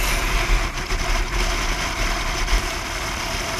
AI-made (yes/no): no